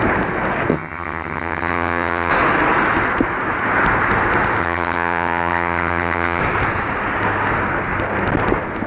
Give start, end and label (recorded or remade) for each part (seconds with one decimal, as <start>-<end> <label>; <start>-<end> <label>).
0.0-0.7 recorded; 0.7-2.3 remade; 2.3-4.6 recorded; 4.6-6.4 remade; 6.4-8.9 recorded